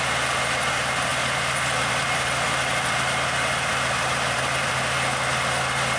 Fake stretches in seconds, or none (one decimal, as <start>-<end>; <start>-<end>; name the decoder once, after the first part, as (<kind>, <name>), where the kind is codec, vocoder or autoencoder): 1.1-4.7 (vocoder, BigVGAN v2)